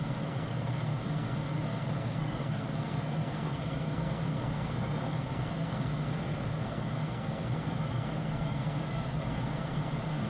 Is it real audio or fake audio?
fake